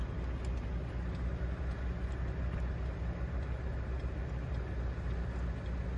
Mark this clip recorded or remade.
recorded